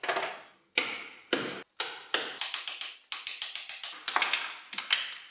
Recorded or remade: recorded